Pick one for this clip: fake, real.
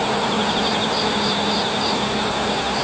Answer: real